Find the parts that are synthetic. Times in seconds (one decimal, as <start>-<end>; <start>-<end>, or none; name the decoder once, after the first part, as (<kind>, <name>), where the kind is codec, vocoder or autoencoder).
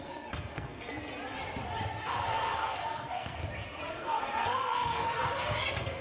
0.0-1.1 (codec, SNAC); 2.0-3.4; 3.9-6.0